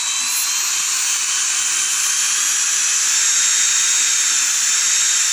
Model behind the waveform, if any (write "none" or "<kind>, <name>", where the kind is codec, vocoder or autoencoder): none